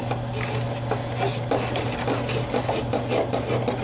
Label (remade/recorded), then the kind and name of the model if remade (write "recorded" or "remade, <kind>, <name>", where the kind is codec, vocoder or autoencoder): recorded